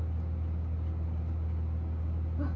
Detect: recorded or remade recorded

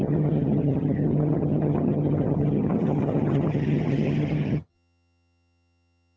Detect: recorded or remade remade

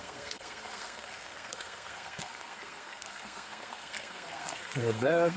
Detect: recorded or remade remade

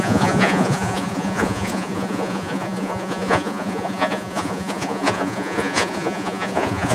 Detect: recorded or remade remade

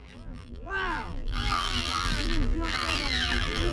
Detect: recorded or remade remade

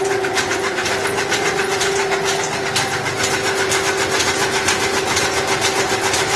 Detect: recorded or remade recorded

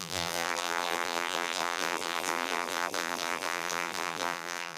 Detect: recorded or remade remade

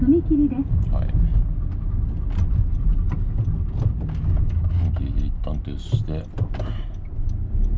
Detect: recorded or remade recorded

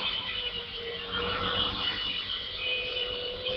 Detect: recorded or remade remade